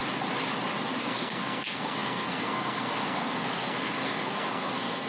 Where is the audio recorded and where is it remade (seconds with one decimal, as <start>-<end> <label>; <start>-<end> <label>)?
0.0-1.0 recorded; 1.0-5.1 remade